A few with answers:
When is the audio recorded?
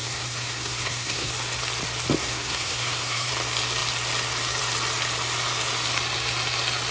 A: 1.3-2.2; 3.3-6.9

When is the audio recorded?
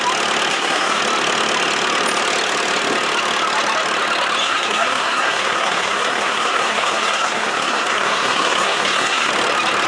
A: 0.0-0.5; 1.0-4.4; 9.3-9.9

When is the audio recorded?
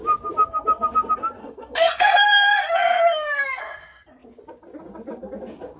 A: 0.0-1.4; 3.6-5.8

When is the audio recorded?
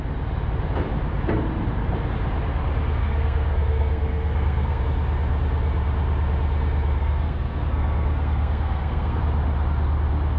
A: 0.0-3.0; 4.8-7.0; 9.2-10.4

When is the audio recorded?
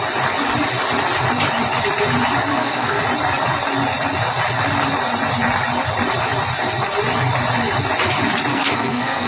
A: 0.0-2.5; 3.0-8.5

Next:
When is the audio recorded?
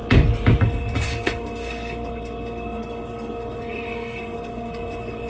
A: 0.0-0.6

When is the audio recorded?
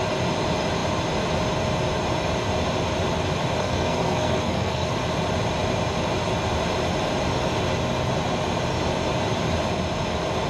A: 0.0-3.6; 4.9-10.5